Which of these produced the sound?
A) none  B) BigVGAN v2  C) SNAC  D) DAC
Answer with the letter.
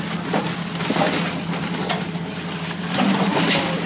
A